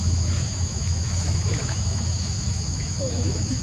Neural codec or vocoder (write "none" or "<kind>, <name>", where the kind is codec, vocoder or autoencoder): autoencoder, DAC-VAE